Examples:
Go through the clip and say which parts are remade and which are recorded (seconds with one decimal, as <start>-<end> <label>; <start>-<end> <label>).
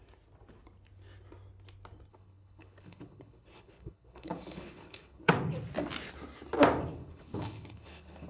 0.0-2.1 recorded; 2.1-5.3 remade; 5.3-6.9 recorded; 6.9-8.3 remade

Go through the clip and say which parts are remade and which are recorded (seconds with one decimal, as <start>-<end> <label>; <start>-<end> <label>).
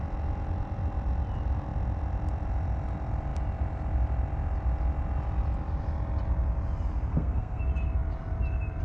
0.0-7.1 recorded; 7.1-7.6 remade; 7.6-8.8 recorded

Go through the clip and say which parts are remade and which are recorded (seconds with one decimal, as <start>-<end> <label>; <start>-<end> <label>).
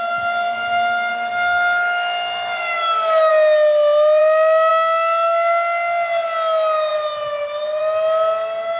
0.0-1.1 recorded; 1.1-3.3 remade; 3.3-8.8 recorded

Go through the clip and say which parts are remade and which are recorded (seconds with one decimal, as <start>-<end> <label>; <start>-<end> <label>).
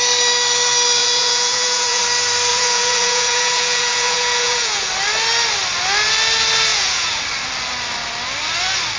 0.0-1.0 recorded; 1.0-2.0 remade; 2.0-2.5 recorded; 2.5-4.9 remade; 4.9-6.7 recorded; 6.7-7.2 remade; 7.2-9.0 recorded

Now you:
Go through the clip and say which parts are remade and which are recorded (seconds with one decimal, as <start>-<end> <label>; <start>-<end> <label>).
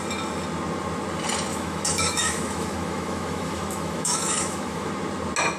0.0-1.5 recorded; 1.5-4.9 remade; 4.9-5.6 recorded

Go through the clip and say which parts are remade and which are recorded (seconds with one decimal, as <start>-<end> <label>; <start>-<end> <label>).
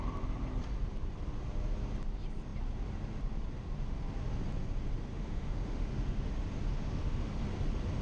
0.0-5.1 recorded; 5.1-6.3 remade; 6.3-6.7 recorded; 6.7-7.4 remade; 7.4-8.0 recorded